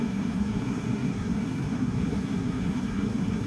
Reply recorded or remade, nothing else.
remade